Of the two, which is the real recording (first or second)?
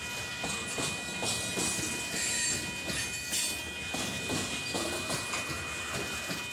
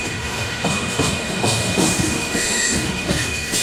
first